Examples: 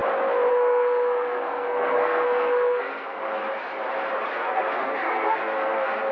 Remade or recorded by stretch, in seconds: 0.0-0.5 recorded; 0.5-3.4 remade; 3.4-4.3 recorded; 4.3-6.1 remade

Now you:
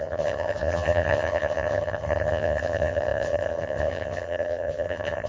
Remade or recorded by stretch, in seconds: 0.0-5.3 remade

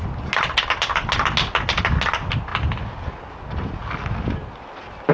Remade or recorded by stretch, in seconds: 0.0-5.1 recorded

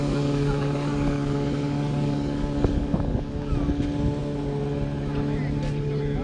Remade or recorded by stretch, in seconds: 0.0-3.5 remade; 3.5-6.2 recorded

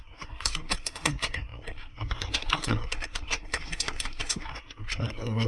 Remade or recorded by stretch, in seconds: 0.0-5.5 remade

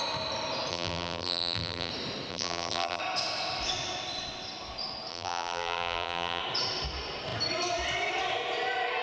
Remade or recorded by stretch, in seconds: 0.0-0.7 recorded; 0.7-1.9 remade; 1.9-2.3 recorded; 2.3-3.0 remade; 3.0-5.1 recorded; 5.1-6.4 remade; 6.4-9.0 recorded